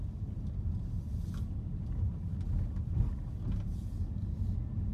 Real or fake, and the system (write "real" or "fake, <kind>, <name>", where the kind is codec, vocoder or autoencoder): real